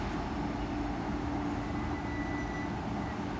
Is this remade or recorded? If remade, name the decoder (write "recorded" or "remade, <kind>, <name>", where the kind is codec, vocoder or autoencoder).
recorded